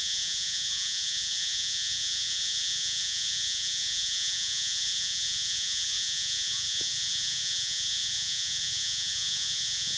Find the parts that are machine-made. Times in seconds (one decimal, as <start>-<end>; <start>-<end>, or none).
0.0-10.0